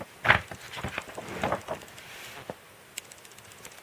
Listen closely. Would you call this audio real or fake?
real